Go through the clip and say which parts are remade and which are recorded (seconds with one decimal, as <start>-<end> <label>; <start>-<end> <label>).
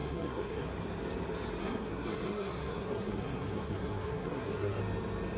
0.0-0.7 remade; 0.7-1.6 recorded; 1.6-4.8 remade; 4.8-5.4 recorded